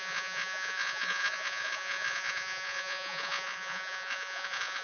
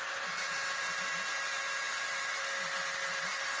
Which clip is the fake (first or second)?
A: first